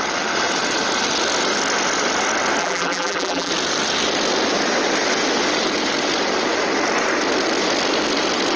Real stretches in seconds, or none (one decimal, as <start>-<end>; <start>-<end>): 0.0-2.6; 3.5-8.6